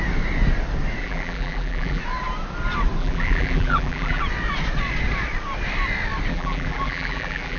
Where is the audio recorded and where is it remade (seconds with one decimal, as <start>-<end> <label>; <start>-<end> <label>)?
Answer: 0.0-1.0 recorded; 1.0-2.0 remade; 2.0-3.0 recorded; 3.0-4.2 remade; 4.2-6.3 recorded; 6.3-7.6 remade